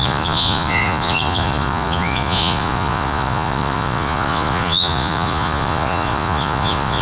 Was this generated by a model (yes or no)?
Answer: yes